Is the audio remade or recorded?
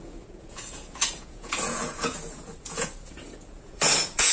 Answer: remade